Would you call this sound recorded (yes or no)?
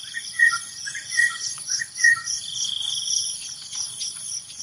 no